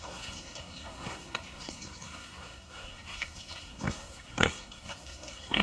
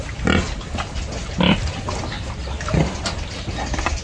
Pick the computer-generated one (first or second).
first